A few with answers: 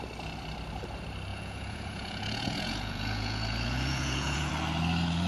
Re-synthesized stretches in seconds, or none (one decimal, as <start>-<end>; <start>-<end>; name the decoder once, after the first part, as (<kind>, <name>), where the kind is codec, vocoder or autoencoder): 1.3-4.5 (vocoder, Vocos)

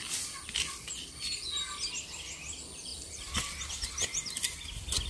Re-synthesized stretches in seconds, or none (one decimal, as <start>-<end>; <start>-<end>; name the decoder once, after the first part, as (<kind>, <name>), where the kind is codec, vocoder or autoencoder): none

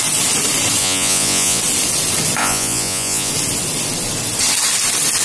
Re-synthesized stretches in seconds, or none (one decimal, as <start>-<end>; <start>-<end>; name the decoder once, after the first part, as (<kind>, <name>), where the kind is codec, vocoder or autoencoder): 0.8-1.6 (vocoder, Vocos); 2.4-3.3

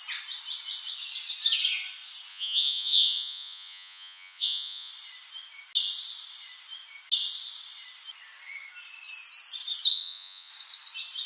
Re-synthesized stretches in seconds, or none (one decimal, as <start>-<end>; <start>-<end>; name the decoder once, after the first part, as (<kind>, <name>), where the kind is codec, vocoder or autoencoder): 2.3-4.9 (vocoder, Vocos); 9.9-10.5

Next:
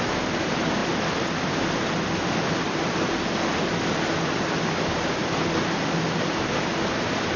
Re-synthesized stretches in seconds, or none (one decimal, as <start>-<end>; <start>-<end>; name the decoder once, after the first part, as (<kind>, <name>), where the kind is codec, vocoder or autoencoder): none

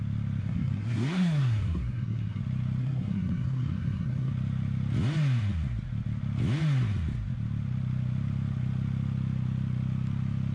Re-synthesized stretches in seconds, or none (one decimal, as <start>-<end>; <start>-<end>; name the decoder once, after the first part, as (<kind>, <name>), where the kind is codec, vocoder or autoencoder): 0.4-2.4 (codec, SNAC); 2.8-4.3